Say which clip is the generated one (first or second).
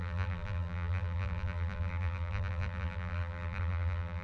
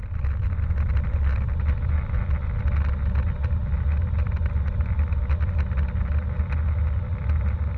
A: first